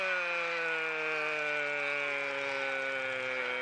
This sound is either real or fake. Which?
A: real